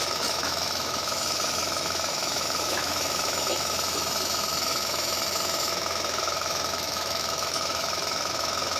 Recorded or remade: remade